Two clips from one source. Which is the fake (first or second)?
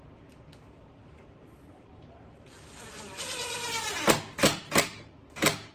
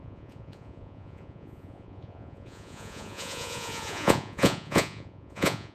second